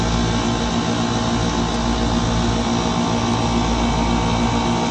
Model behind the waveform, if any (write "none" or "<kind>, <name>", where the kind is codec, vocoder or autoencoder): none